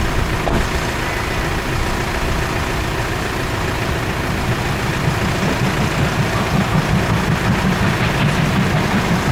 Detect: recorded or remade recorded